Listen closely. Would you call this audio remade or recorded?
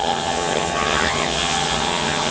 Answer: remade